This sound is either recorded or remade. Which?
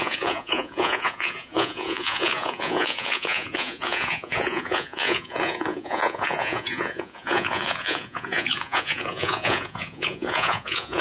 remade